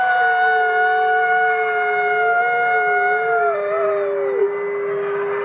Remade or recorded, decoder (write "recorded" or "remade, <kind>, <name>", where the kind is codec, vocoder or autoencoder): recorded